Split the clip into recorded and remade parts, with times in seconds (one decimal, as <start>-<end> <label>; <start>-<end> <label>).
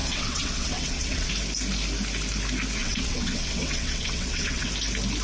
0.0-1.3 remade; 1.3-2.8 recorded; 2.8-4.7 remade; 4.7-5.2 recorded